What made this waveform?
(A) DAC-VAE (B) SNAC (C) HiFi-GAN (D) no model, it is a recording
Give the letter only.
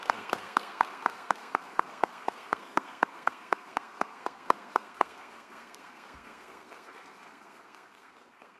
B